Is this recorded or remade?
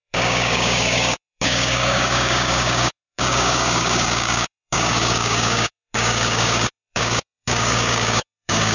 remade